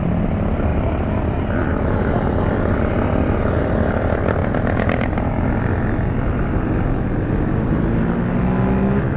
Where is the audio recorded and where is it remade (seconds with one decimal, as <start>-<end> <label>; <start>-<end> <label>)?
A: 0.0-1.7 recorded; 1.7-2.4 remade; 2.4-4.4 recorded; 4.4-5.3 remade; 5.3-9.2 recorded